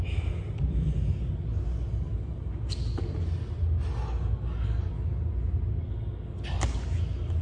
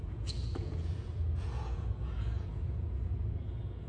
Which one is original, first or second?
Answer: first